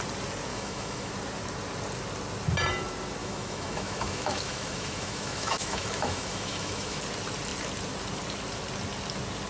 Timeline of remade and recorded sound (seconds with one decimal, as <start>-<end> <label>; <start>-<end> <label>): 0.0-0.5 recorded; 0.5-1.1 remade; 1.1-3.2 recorded; 3.2-7.0 remade; 7.0-9.5 recorded